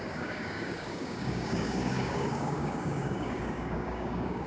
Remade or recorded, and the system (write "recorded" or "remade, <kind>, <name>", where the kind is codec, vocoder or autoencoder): remade, codec, DAC